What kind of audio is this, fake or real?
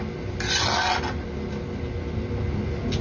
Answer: real